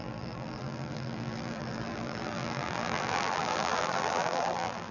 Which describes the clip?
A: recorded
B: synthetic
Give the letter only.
B